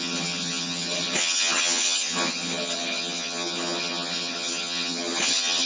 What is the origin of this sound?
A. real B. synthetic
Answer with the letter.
B